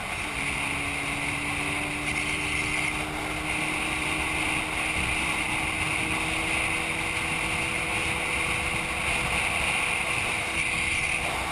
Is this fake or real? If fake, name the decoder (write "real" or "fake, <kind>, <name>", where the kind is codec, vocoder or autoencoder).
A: real